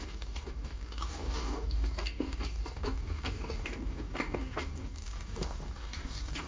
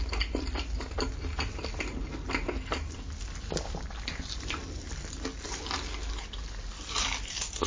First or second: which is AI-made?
first